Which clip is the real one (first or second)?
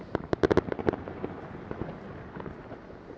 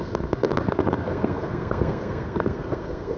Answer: first